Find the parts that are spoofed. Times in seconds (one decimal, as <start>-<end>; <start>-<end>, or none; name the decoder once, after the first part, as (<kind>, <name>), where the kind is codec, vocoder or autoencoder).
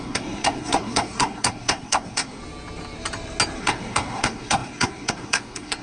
0.0-2.4 (codec, SNAC); 3.6-5.8